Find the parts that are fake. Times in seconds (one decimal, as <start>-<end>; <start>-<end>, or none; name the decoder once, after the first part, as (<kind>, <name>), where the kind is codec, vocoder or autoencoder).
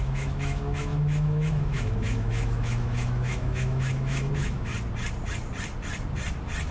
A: 0.0-4.7 (autoencoder, DAC-VAE)